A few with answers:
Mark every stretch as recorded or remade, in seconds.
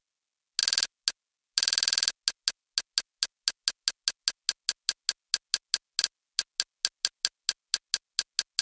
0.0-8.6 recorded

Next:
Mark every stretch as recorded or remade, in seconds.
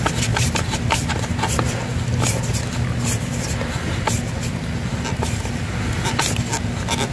0.0-7.1 recorded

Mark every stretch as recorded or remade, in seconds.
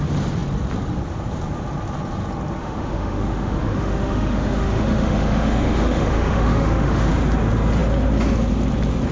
0.0-2.6 recorded; 2.6-7.1 remade; 7.1-9.1 recorded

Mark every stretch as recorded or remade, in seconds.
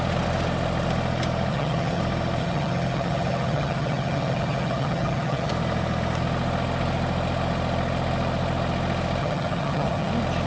0.0-1.5 recorded; 1.5-2.0 remade; 2.0-2.4 recorded; 2.4-5.5 remade; 5.5-9.2 recorded; 9.2-10.1 remade; 10.1-10.5 recorded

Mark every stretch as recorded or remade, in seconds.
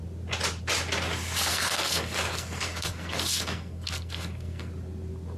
0.0-1.5 recorded; 1.5-4.7 remade; 4.7-5.4 recorded